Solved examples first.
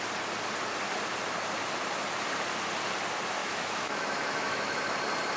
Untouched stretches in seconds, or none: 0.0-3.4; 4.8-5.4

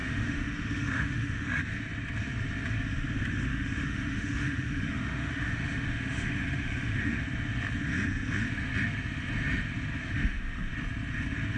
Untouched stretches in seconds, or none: 1.6-3.5; 7.2-10.0; 10.7-11.6

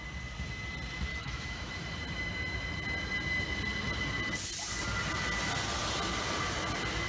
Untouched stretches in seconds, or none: 0.0-1.1; 1.7-7.1

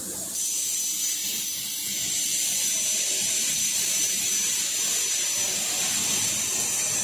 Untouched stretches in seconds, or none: 0.0-7.0

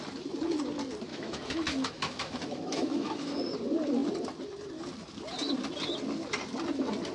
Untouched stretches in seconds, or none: 0.0-1.1; 3.4-7.1

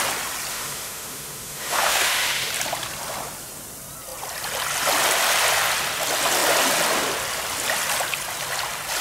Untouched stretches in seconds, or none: 0.0-0.5; 2.5-9.0

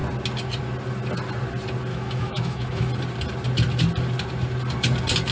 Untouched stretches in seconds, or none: 0.0-1.9; 2.9-5.3